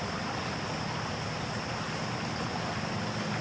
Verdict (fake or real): real